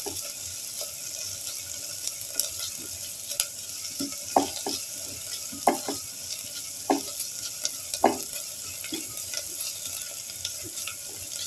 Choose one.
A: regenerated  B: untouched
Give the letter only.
B